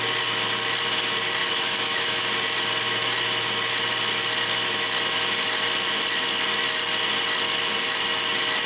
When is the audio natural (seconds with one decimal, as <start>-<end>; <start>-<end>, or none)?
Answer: 0.0-1.4; 2.2-8.7